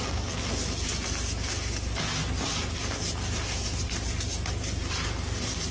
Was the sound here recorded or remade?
recorded